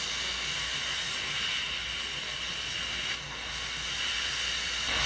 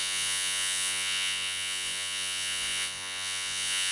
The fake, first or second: second